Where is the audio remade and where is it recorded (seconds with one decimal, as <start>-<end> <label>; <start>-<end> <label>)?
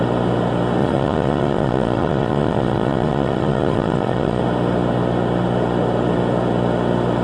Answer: 0.0-0.8 recorded; 0.8-4.4 remade; 4.4-7.2 recorded